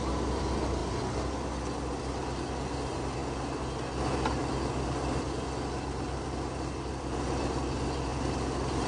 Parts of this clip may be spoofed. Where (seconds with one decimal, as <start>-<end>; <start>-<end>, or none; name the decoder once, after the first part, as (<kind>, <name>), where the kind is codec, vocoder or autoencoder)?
none